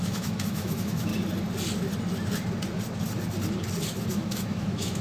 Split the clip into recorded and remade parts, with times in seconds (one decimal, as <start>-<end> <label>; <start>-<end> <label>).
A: 0.0-1.1 remade; 1.1-4.1 recorded; 4.1-5.0 remade